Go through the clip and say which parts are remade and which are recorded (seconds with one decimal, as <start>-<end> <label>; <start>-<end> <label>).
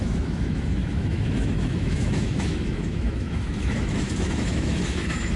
0.0-5.4 remade